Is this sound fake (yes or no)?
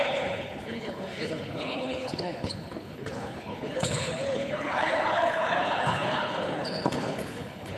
yes